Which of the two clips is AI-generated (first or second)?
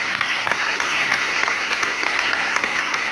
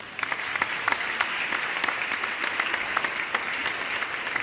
first